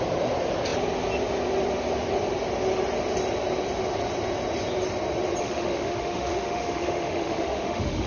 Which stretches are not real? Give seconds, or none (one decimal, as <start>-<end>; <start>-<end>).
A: 5.4-8.1